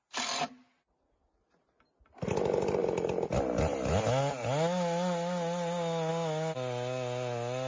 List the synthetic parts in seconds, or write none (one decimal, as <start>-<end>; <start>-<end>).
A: none